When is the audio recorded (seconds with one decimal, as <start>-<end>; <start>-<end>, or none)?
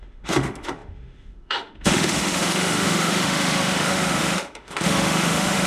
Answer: none